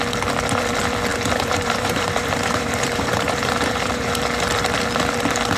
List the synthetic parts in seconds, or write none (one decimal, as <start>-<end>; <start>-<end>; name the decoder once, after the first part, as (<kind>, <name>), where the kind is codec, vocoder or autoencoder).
1.1-4.1 (vocoder, BigVGAN v2)